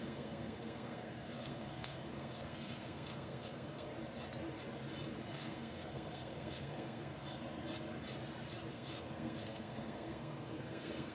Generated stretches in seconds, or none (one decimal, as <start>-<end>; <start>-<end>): 0.0-3.9; 5.3-7.1; 8.7-11.1